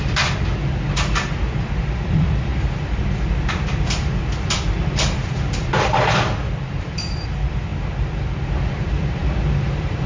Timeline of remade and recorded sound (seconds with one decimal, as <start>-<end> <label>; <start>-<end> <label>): 0.0-7.7 remade; 7.7-8.7 recorded; 8.7-10.1 remade